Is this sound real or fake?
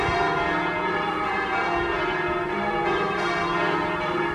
fake